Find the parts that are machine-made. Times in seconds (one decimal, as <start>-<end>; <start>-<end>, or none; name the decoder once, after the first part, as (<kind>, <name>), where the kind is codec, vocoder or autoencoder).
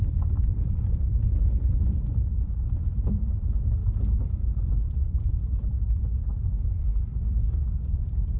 0.0-6.9 (vocoder, BigVGAN v2); 7.4-8.4